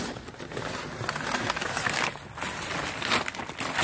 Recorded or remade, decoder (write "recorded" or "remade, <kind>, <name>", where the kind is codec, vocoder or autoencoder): recorded